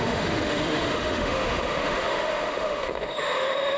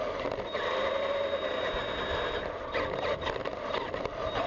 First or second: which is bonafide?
second